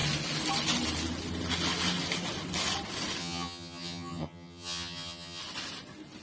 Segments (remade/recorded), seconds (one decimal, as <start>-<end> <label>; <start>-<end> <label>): 0.0-3.2 recorded; 3.2-5.4 remade; 5.4-6.2 recorded